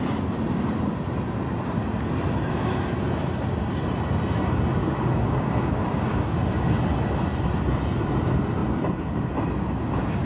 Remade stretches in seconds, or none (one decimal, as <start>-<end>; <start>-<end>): 4.8-6.7

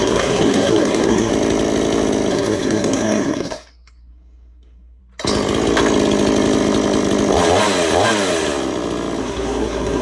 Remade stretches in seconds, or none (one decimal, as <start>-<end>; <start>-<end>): 0.0-1.3; 2.3-5.0; 9.2-10.0

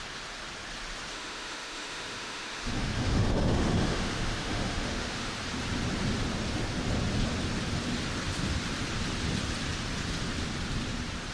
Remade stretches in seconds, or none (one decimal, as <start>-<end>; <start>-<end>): 1.1-5.3

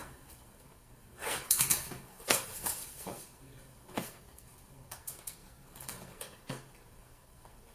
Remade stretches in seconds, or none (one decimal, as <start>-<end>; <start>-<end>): 0.0-7.7

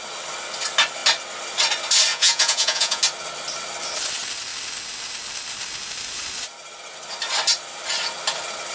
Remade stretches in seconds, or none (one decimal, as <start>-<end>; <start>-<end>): 2.1-3.0

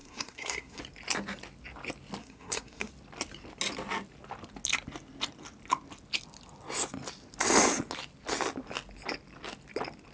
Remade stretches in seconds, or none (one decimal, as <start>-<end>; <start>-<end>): 0.0-0.8; 2.2-2.9

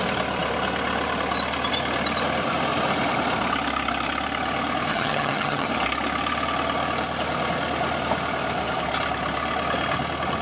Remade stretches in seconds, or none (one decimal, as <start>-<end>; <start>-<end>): 4.9-5.7

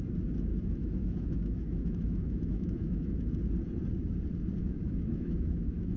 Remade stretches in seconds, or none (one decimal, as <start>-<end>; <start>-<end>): 0.5-3.3; 4.6-6.0